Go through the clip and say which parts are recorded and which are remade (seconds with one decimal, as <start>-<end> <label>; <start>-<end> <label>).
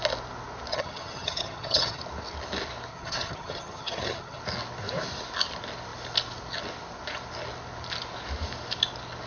0.0-0.7 recorded; 0.7-2.0 remade; 2.0-2.9 recorded; 2.9-4.4 remade; 4.4-9.3 recorded